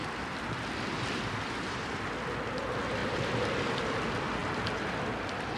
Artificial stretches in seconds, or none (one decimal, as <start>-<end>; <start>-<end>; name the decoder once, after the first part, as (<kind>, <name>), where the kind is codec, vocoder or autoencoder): 0.0-1.5 (vocoder, BigVGAN v2); 4.4-5.6